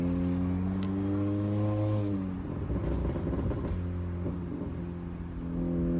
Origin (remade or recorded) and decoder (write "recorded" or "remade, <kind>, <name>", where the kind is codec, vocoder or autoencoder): recorded